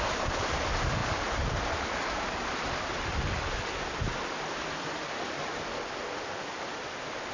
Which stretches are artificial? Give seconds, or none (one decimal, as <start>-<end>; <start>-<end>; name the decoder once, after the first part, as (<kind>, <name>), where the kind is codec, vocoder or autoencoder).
none